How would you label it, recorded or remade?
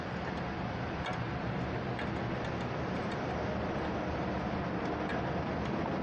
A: recorded